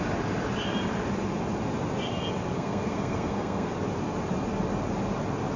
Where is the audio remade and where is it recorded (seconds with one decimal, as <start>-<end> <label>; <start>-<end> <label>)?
0.0-2.5 recorded; 2.5-3.7 remade; 3.7-5.6 recorded